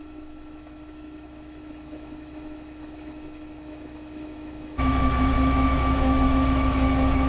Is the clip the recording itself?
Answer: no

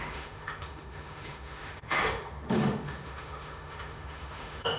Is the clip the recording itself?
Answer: no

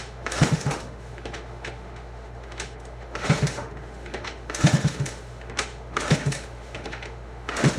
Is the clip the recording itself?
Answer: no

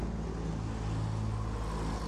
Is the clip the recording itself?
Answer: yes